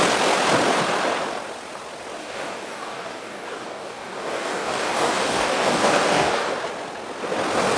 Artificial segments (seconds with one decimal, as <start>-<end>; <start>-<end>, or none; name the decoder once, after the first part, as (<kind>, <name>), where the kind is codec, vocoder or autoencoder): 2.2-6.5 (codec, DAC)

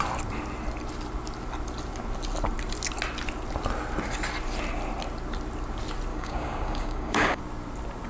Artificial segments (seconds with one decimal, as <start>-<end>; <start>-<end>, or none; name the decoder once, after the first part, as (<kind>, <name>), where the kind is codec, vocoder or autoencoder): 6.1-7.4 (codec, DAC)

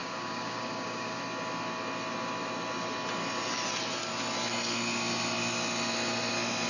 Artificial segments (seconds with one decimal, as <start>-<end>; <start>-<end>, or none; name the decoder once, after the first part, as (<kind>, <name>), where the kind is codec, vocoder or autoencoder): 0.0-1.2 (codec, DAC)